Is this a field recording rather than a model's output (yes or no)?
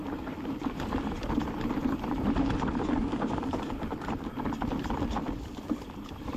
no